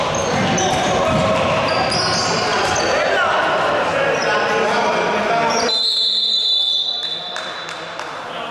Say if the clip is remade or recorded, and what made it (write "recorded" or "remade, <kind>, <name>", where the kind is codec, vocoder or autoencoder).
recorded